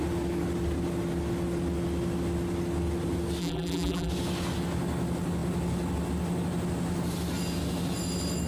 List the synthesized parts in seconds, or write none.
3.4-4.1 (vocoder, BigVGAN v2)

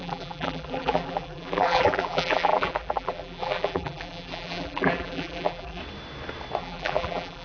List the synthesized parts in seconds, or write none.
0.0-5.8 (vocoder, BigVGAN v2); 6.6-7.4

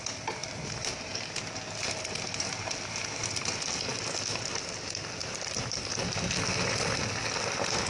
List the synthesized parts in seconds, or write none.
0.4-3.5 (vocoder, BigVGAN v2); 5.2-5.9

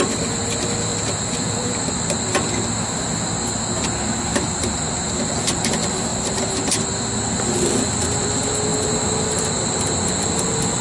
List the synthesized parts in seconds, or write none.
0.9-1.9 (vocoder, BigVGAN v2)